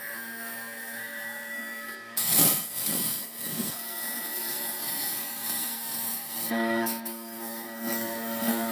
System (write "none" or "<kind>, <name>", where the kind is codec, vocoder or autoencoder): codec, SNAC